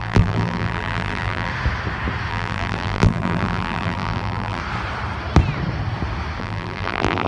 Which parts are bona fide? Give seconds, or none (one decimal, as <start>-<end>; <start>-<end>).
1.5-2.3; 4.6-6.4